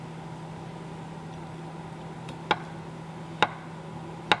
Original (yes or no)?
yes